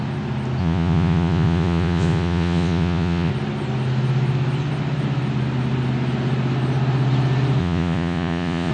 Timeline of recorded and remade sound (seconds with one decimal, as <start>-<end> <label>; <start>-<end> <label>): 0.0-0.6 recorded; 0.6-3.3 remade; 3.3-7.6 recorded; 7.6-8.7 remade